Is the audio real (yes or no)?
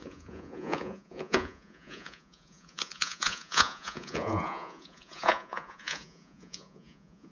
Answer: no